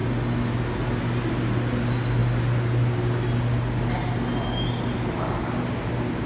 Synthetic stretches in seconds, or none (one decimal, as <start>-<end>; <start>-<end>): none